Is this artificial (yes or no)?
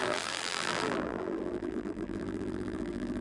yes